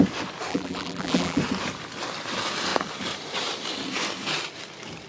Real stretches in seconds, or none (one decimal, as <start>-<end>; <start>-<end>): 0.0-0.5; 1.4-5.1